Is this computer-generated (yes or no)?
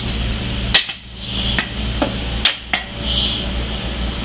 no